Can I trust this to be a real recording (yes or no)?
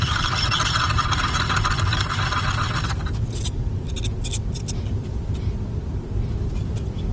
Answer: no